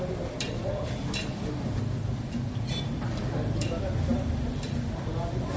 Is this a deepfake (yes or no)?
no